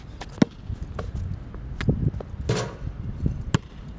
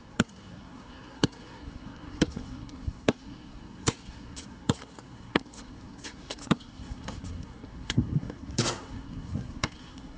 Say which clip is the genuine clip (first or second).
first